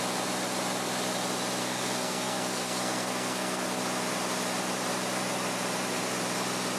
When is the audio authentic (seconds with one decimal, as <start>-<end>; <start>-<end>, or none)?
0.0-1.6; 3.8-6.8